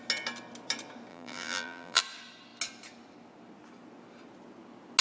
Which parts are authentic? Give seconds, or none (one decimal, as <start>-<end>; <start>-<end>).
0.0-1.1; 2.0-5.0